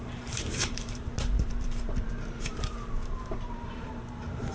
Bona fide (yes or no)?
no